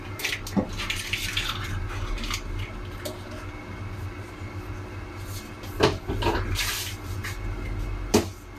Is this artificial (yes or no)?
no